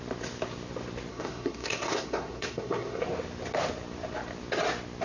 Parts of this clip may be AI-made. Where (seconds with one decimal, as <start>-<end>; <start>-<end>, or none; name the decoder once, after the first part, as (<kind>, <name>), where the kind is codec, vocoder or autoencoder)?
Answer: 1.1-3.0 (codec, SNAC)